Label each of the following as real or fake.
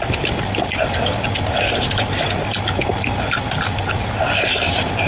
real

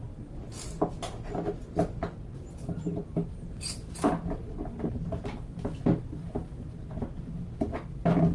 real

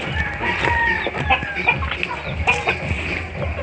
real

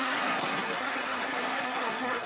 fake